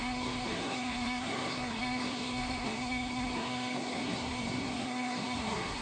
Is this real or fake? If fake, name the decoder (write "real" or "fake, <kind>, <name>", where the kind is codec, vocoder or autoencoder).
fake, codec, SNAC